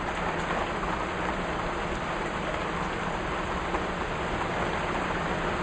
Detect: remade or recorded recorded